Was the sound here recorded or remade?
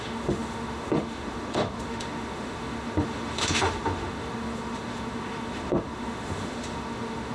remade